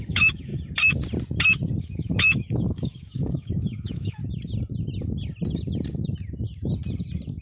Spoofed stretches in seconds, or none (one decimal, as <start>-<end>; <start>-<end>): 0.0-0.5; 1.8-4.2